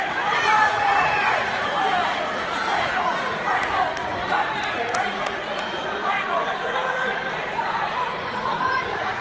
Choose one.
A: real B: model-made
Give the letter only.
B